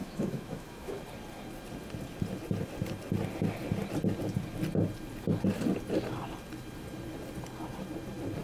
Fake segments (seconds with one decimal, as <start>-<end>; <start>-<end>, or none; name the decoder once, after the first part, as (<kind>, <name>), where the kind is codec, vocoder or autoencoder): 0.0-1.0 (autoencoder, DAC-VAE)